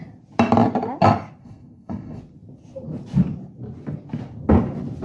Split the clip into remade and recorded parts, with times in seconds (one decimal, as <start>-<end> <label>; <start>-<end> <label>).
0.0-1.4 recorded; 1.4-2.2 remade; 2.2-5.0 recorded